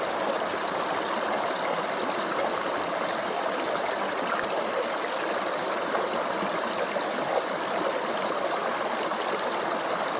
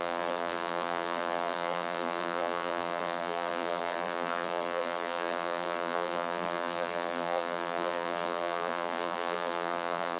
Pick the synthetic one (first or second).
second